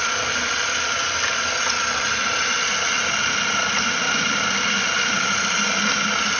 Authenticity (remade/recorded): recorded